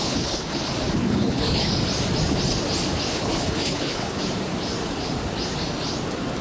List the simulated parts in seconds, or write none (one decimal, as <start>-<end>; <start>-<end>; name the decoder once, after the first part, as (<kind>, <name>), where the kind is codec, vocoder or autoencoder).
0.0-0.6 (codec, HILCodec); 1.0-1.7; 3.1-4.2